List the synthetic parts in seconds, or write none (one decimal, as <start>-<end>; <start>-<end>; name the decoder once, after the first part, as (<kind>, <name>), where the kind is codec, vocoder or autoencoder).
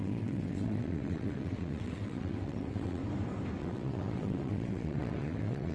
0.0-3.0 (vocoder, WaveNeXt); 3.6-5.7